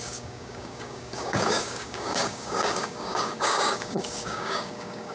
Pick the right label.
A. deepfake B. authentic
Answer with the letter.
A